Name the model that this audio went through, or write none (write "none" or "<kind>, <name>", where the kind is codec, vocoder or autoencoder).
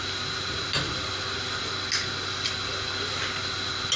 none